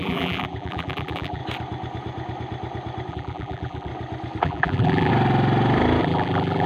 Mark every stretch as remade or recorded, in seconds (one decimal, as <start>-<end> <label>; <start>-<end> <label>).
0.0-1.4 remade; 1.4-3.1 recorded; 3.1-3.9 remade; 3.9-4.4 recorded; 4.4-5.1 remade; 5.1-6.0 recorded; 6.0-6.7 remade